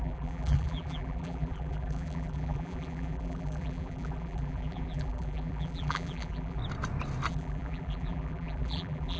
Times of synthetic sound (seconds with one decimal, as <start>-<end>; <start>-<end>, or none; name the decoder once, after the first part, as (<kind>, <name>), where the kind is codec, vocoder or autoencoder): 0.0-6.6 (vocoder, BigVGAN v2); 7.3-9.2